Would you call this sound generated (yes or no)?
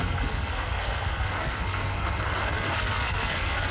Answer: yes